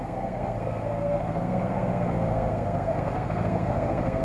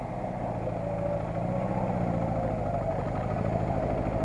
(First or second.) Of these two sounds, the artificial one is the first